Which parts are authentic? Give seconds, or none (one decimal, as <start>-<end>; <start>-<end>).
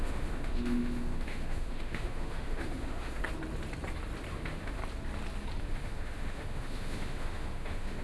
3.2-4.3; 4.8-5.6